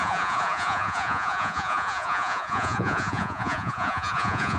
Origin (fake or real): fake